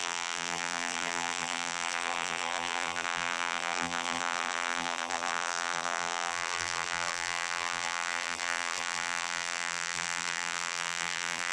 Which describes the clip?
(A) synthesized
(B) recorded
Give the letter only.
A